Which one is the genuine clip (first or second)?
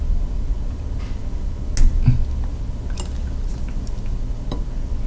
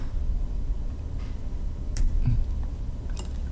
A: first